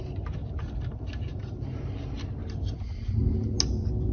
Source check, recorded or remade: recorded